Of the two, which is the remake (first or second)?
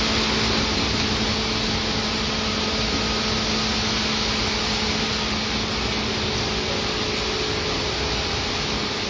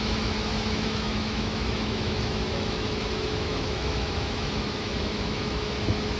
second